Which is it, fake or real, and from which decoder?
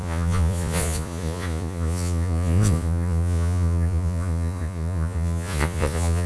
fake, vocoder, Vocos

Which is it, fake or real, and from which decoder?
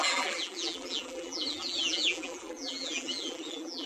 fake, vocoder, BigVGAN v2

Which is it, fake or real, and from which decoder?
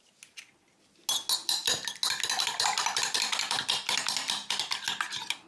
real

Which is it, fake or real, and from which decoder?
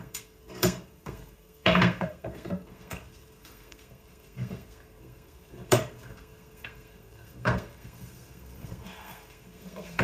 fake, codec, SNAC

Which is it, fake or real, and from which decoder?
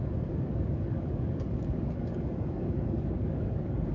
fake, codec, DAC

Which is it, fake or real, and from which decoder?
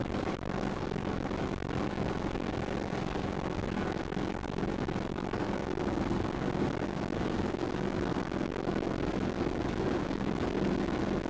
fake, codec, DAC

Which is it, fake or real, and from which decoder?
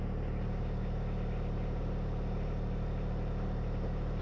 real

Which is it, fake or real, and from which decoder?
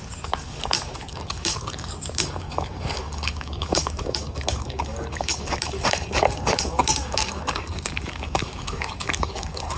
fake, codec, DAC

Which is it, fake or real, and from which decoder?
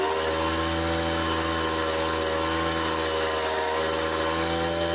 real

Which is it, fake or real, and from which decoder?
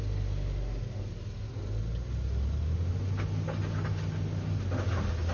real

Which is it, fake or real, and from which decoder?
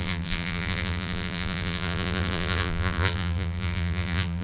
fake, vocoder, BigVGAN v2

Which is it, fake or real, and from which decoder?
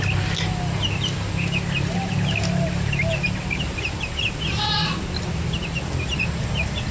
real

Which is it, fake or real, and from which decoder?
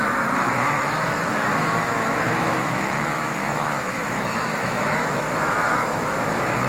fake, autoencoder, DAC-VAE